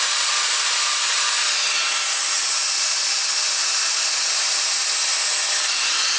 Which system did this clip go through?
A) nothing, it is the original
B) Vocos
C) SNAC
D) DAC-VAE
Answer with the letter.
A